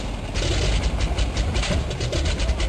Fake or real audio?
real